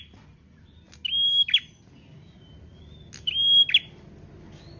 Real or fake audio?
real